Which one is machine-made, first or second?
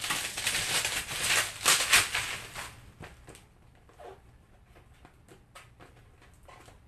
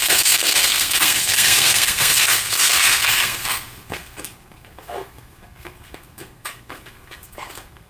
second